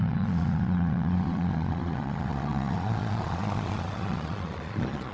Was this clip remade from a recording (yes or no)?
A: yes